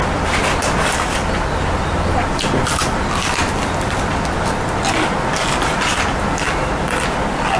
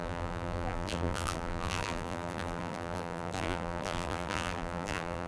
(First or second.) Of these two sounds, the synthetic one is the second